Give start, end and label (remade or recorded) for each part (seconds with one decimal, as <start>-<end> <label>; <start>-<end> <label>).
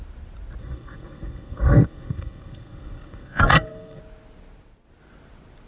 0.0-0.6 recorded; 0.6-4.0 remade; 4.0-5.7 recorded